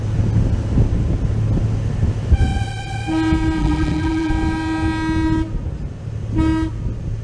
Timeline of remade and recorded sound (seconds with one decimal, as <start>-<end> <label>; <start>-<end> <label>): 0.0-3.6 recorded; 3.6-4.3 remade; 4.3-7.2 recorded